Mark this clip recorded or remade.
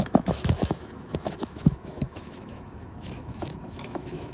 remade